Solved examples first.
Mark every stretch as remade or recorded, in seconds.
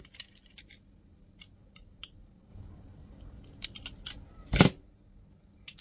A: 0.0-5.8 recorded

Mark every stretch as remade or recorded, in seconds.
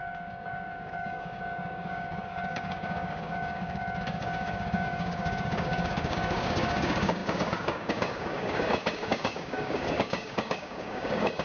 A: 0.0-11.4 remade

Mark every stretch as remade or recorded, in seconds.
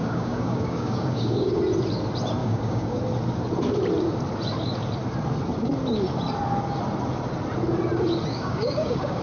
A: 0.0-1.6 remade; 1.6-2.4 recorded; 2.4-3.0 remade; 3.0-8.3 recorded; 8.3-9.2 remade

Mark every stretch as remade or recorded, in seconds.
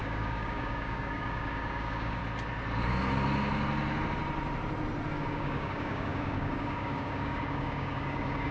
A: 0.0-2.2 remade; 2.2-5.1 recorded; 5.1-8.5 remade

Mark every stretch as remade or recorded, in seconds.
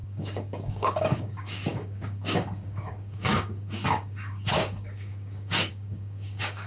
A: 0.0-6.7 remade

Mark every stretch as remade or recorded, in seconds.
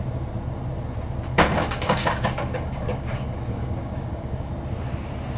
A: 0.0-1.3 recorded; 1.3-4.5 remade; 4.5-5.4 recorded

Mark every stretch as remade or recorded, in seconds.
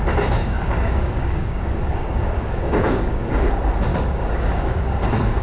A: 0.0-0.4 recorded; 0.4-3.3 remade; 3.3-3.9 recorded; 3.9-5.4 remade